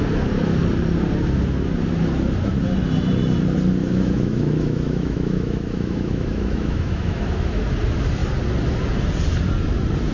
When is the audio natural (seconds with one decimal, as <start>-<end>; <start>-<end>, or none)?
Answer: 0.0-3.8; 7.6-10.1